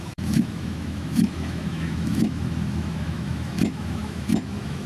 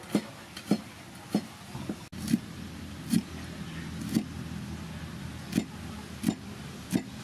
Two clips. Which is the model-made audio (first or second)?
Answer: first